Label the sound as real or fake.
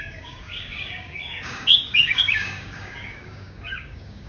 fake